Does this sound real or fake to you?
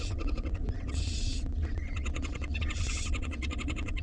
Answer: fake